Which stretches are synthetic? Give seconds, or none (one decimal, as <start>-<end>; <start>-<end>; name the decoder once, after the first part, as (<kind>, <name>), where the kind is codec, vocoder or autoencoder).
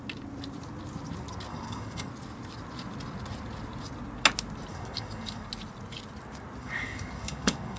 1.5-2.1 (codec, DAC); 4.7-5.5; 6.6-7.8